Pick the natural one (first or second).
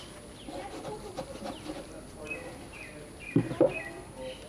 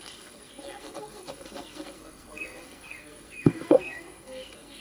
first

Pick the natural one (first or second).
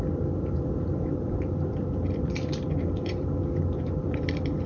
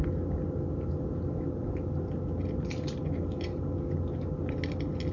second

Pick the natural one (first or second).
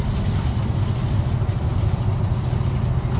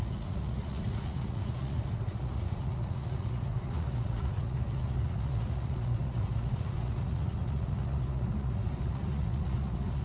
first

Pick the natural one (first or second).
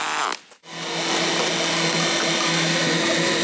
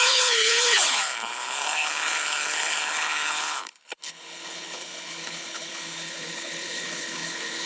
first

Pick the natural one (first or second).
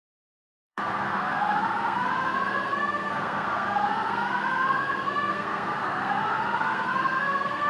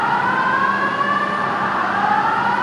second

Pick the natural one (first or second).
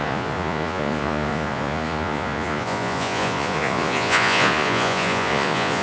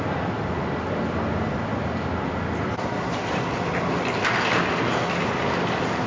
second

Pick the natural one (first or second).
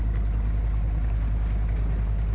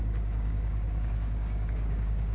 first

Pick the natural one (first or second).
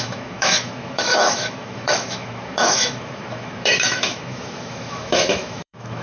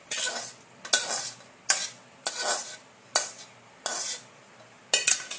second